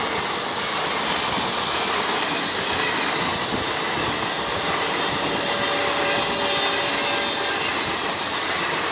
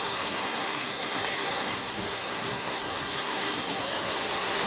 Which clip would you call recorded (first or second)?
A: first